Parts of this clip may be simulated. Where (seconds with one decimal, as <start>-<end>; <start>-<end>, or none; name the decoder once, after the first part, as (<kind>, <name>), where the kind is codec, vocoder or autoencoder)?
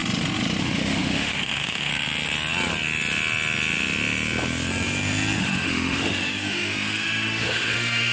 0.6-1.9 (autoencoder, DAC-VAE); 5.4-8.1